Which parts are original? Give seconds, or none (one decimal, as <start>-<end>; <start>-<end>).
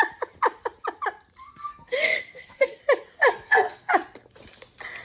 0.0-1.4; 2.8-3.3; 3.9-5.0